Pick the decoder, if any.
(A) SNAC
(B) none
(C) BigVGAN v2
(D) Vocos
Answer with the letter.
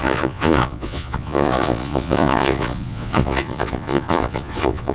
D